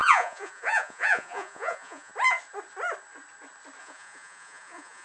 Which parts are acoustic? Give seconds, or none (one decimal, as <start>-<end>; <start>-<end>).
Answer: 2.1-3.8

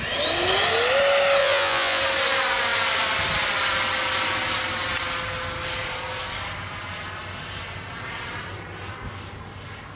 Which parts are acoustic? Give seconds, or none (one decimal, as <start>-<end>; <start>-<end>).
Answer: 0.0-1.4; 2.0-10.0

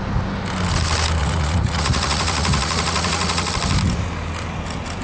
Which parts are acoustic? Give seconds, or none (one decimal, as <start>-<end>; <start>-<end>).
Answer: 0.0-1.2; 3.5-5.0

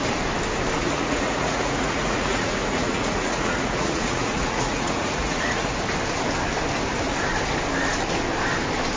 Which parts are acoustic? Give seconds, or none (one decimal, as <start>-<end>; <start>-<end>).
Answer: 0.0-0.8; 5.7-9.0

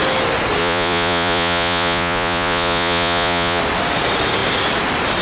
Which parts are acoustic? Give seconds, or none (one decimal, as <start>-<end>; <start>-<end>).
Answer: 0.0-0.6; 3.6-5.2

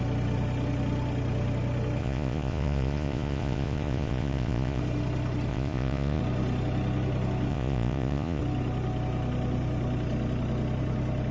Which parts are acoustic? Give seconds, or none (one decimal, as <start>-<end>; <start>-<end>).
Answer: 0.0-2.0; 4.8-5.5; 6.2-7.5; 8.4-11.3

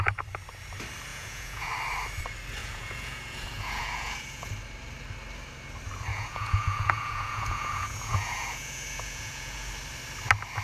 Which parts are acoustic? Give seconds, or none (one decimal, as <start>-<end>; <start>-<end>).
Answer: 0.0-1.1; 1.7-2.6; 4.5-6.1; 9.7-10.6